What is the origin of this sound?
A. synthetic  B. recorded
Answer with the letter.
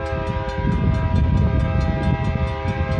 B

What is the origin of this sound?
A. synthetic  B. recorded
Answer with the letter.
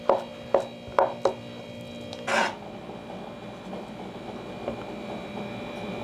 B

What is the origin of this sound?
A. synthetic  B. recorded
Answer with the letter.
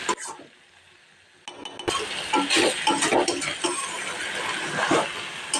B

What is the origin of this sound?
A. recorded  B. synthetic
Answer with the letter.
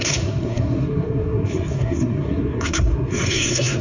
B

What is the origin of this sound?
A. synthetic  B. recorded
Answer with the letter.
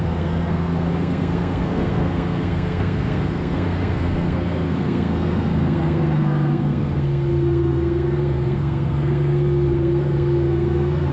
A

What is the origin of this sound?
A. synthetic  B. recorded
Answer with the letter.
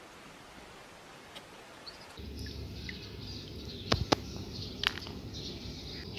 B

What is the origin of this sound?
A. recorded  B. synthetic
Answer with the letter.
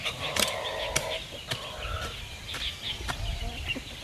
A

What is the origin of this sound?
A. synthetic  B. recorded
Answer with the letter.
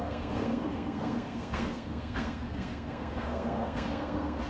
A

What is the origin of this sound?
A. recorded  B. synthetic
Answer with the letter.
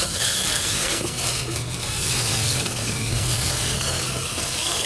B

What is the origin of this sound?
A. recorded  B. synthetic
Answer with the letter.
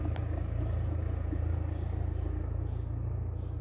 A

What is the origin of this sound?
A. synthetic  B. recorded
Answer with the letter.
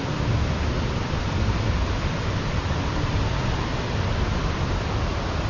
B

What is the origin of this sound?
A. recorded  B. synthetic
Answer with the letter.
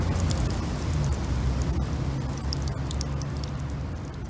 A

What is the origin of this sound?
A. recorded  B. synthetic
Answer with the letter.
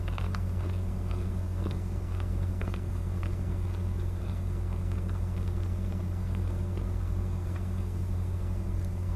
B